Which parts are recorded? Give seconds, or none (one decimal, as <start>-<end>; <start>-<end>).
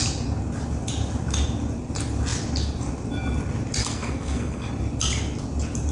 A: 0.0-3.8; 4.7-5.9